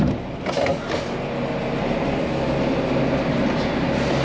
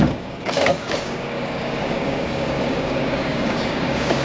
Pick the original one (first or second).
first